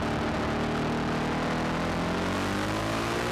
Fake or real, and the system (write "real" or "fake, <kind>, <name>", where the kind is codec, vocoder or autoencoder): real